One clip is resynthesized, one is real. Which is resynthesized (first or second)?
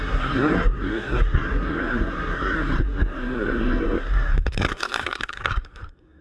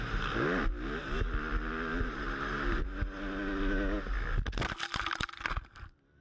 first